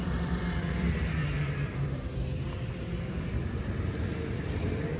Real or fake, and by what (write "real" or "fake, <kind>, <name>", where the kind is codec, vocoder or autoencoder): fake, vocoder, BigVGAN v2